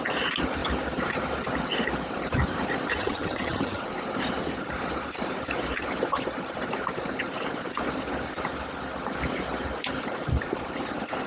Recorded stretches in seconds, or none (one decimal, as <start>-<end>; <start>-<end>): 0.0-2.9; 3.8-11.3